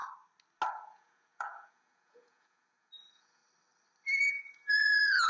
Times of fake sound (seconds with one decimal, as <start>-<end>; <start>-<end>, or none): 0.7-3.4; 4.2-5.3